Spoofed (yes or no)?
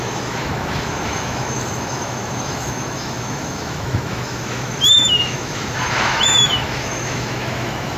yes